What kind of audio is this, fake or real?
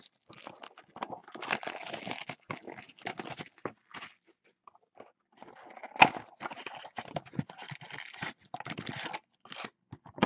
real